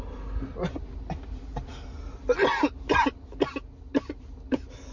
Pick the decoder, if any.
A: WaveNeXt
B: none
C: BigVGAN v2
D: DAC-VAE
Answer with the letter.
B